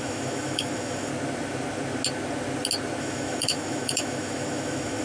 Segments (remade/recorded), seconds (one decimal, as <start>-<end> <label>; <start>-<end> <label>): 0.0-1.1 remade; 1.1-3.0 recorded; 3.0-5.0 remade